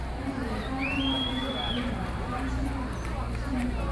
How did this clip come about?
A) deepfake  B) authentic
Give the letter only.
B